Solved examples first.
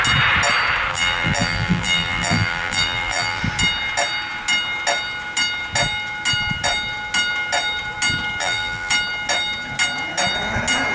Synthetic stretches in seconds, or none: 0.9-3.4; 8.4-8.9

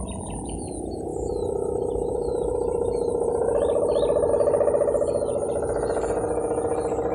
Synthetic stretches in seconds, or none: 1.1-4.3

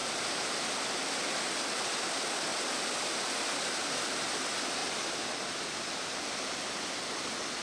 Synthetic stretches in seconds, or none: 0.0-1.2; 4.8-5.6

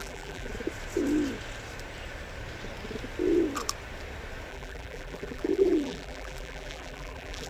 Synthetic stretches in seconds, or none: 0.0-0.5; 4.5-7.5

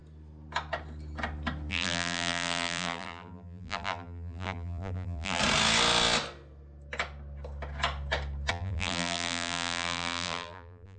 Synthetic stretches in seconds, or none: 1.7-5.4; 8.5-11.0

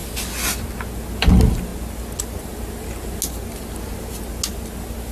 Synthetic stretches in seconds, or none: none

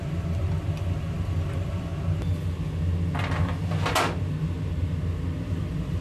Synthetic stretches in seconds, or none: 0.0-1.9; 5.5-6.0